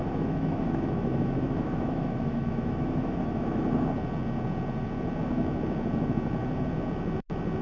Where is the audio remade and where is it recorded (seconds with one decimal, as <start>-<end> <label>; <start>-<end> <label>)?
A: 0.0-3.6 remade; 3.6-7.6 recorded